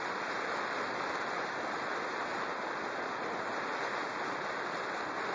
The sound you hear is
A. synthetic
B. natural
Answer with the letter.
B